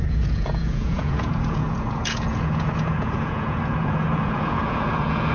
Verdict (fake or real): fake